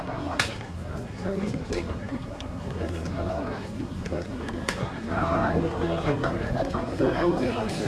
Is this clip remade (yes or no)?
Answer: yes